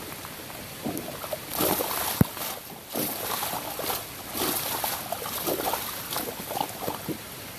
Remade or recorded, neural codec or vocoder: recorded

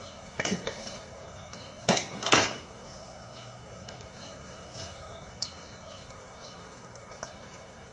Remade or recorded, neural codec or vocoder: remade, codec, SNAC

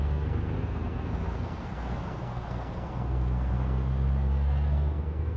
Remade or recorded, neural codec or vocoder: remade, codec, SNAC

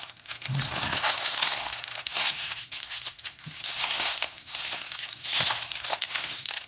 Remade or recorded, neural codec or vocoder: remade, codec, SNAC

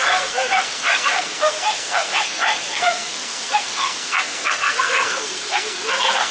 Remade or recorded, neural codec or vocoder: remade, codec, SNAC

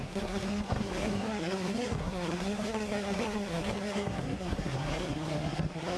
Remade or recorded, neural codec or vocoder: remade, codec, SNAC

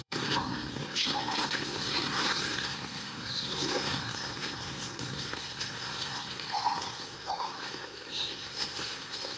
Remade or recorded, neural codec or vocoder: remade, codec, SNAC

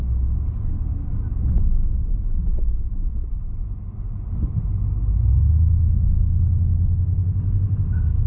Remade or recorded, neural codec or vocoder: recorded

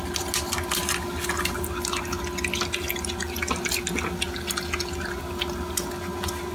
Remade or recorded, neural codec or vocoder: recorded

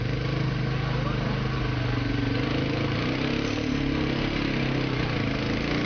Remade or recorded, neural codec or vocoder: recorded